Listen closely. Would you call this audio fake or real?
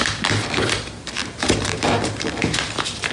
fake